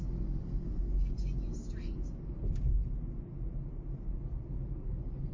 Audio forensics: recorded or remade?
recorded